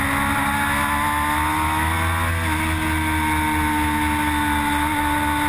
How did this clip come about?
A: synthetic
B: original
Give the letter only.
B